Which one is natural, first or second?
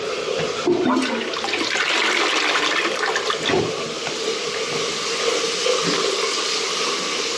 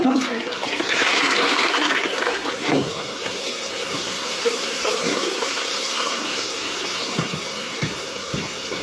first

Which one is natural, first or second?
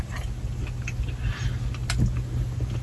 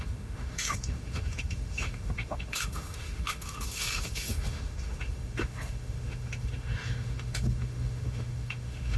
first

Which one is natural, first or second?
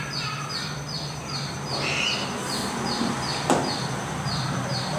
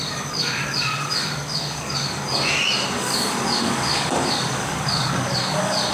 first